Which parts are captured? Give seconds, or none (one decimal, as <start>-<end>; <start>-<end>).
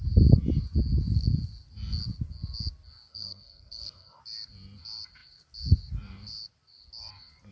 0.0-3.1; 4.2-7.5